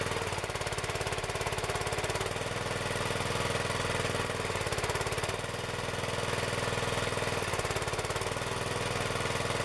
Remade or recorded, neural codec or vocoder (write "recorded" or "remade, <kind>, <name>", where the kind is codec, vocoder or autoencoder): recorded